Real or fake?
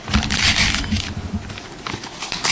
real